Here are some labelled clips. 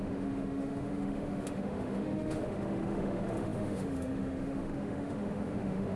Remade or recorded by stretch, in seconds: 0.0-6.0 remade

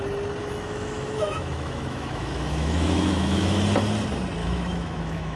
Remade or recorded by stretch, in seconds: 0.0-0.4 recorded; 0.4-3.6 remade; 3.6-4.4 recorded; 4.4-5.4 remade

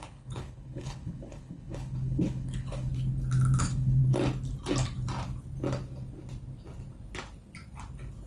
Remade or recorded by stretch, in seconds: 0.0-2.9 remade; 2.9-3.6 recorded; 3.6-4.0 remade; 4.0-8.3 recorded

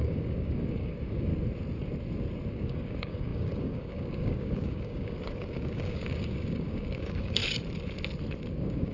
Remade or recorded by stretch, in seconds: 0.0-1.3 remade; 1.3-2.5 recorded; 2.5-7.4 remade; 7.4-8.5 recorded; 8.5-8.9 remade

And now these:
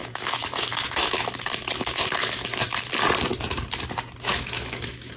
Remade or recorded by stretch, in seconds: 0.0-2.9 remade; 2.9-4.3 recorded; 4.3-5.2 remade

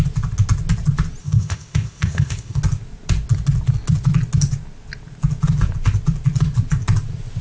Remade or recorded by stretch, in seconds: 0.0-1.2 recorded; 1.2-2.6 remade; 2.6-7.4 recorded

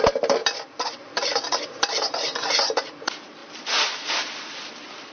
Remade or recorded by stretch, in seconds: 0.0-5.1 remade